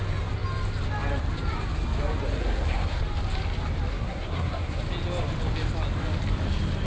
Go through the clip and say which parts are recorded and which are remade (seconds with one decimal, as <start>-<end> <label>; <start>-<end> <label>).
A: 0.0-2.4 recorded; 2.4-3.0 remade; 3.0-3.9 recorded; 3.9-4.8 remade; 4.8-6.9 recorded